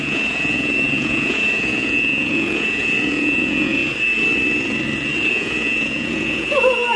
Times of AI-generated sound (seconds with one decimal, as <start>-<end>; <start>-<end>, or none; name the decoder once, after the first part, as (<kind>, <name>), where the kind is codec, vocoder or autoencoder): 0.0-3.8 (vocoder, Vocos); 5.3-7.0